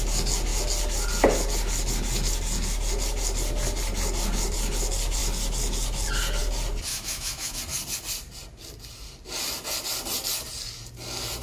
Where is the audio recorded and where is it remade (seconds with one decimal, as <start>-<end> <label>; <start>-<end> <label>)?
0.0-6.9 recorded; 6.9-7.6 remade; 7.6-11.4 recorded